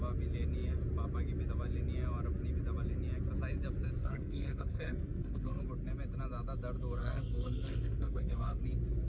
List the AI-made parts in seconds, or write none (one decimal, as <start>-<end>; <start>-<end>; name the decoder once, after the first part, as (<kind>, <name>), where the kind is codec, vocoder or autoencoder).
4.0-5.6 (codec, SNAC); 7.0-8.6

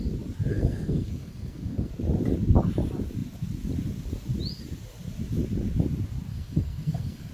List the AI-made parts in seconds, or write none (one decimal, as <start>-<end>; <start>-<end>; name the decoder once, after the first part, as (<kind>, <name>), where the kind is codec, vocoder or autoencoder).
0.5-1.9 (codec, SNAC); 6.3-7.3

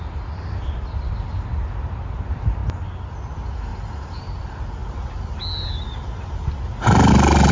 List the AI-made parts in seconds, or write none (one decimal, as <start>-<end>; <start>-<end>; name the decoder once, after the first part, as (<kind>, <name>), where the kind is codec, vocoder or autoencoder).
3.7-4.2 (vocoder, BigVGAN v2)

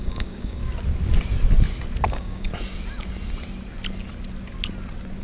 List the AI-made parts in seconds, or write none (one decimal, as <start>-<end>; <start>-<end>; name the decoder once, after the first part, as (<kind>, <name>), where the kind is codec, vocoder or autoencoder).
0.0-0.6 (codec, DAC); 2.1-2.5

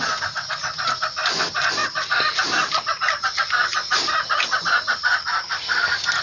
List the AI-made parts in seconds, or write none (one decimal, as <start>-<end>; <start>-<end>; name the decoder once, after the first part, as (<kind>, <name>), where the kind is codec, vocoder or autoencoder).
none

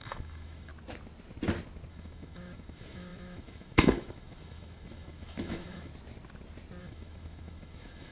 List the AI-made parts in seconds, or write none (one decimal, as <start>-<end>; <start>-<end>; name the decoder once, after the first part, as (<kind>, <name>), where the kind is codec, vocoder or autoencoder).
0.0-0.7 (autoencoder, DAC-VAE); 1.9-5.9; 6.8-8.1

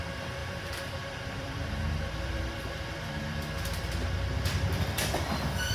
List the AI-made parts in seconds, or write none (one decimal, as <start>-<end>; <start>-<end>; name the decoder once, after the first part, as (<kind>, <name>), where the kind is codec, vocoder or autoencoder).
0.4-3.8 (vocoder, BigVGAN v2)

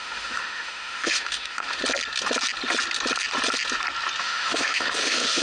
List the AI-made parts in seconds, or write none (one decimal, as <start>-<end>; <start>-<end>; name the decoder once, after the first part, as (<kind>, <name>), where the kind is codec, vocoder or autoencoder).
0.0-1.8 (autoencoder, DAC-VAE); 4.2-5.4